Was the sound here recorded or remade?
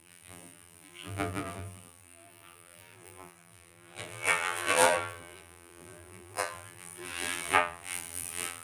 remade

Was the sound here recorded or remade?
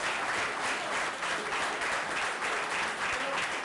recorded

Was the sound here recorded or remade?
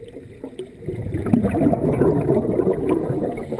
remade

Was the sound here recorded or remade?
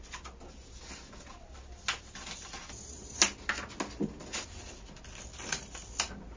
recorded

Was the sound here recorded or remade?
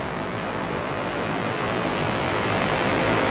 remade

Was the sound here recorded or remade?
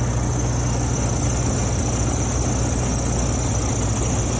recorded